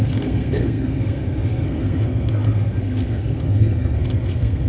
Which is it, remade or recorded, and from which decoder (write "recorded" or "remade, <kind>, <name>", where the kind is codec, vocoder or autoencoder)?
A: remade, codec, SNAC